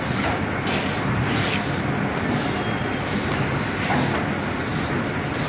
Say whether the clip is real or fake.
real